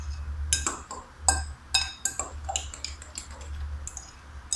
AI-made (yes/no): no